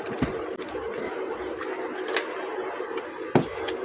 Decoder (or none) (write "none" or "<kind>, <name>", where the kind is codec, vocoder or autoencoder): none